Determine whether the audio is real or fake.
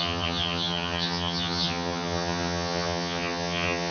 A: fake